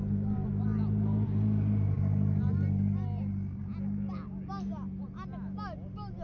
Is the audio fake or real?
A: real